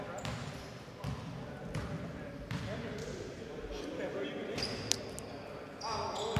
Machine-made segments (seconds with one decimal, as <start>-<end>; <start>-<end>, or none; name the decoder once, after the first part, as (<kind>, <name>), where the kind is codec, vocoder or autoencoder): none